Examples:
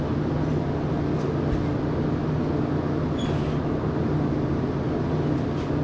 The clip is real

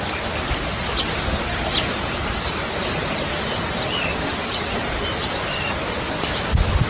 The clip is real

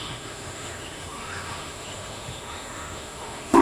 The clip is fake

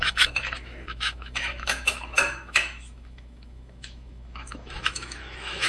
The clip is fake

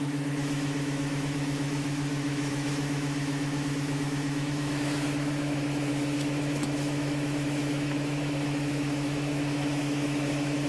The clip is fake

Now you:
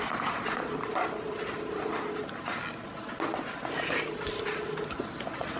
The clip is real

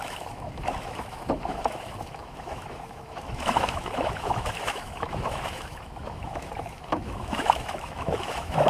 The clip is fake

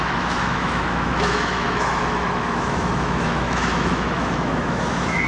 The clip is fake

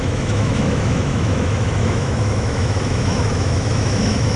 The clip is fake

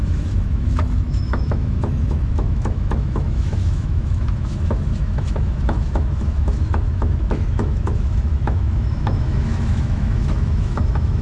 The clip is fake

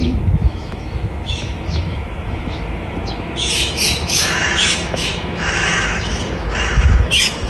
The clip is fake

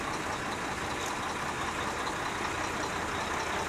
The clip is real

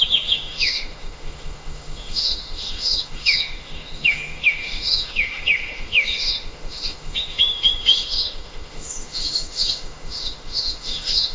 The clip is fake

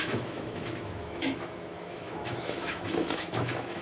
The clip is fake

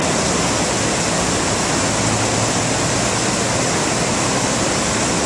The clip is real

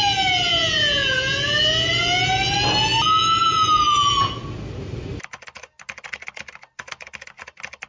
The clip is real